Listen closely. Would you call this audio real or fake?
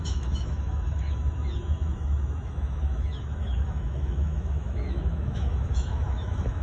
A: fake